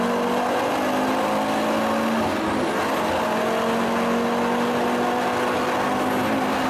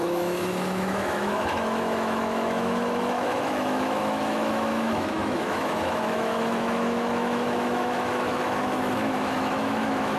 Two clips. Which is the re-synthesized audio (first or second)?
second